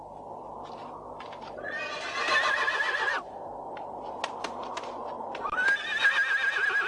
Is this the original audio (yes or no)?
yes